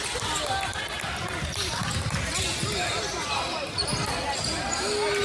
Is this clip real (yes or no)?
yes